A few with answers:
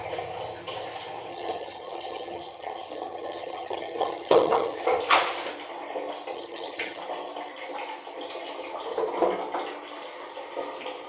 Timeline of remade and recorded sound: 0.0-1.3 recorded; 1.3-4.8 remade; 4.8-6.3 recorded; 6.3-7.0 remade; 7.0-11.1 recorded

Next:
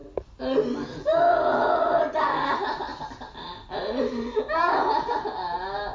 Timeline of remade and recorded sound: 0.0-5.9 recorded